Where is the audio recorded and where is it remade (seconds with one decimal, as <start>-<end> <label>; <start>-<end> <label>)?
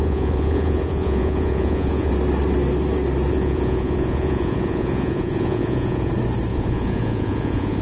0.0-2.1 remade; 2.1-3.3 recorded; 3.3-6.1 remade; 6.1-6.5 recorded; 6.5-7.8 remade